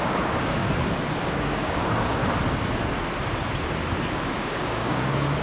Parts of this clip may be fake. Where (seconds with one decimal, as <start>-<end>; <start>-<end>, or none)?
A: 0.0-0.6; 1.2-2.2; 4.1-5.4